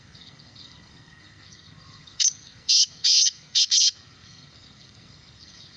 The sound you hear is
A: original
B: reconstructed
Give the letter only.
B